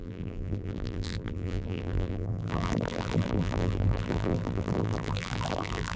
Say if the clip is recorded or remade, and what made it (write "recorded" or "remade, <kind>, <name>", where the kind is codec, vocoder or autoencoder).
remade, vocoder, BigVGAN v2